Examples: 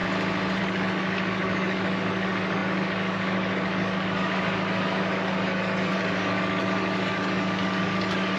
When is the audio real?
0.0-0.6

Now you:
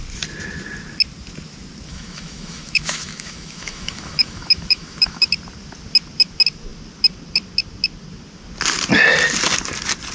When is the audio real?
0.0-1.9; 5.3-10.1

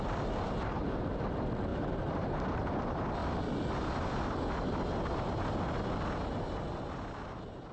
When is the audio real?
0.0-1.7; 2.6-7.7

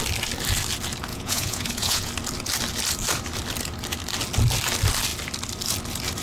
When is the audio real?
0.0-1.1; 2.1-6.2

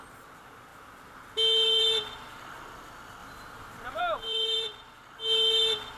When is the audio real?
0.0-6.0

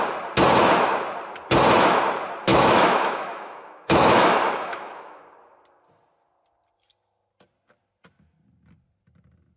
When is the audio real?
0.0-2.5; 5.2-9.6

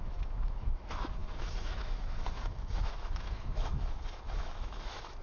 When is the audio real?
none

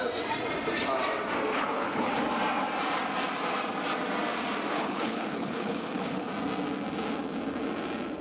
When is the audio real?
0.0-1.5; 2.2-4.7; 6.3-8.2